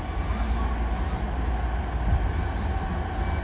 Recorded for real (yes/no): yes